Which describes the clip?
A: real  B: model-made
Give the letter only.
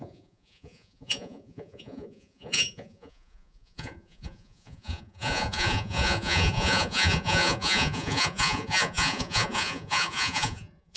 B